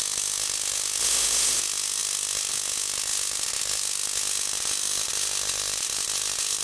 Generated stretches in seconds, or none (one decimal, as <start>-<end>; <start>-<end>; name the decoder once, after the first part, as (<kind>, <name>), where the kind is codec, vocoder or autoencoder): 1.0-1.6 (autoencoder, DAC-VAE)